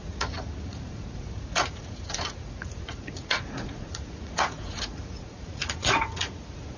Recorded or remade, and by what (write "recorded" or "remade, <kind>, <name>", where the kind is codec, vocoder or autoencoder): remade, vocoder, Vocos